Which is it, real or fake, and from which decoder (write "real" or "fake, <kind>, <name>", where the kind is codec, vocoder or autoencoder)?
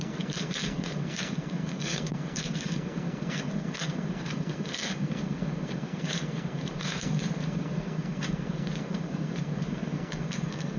fake, codec, SNAC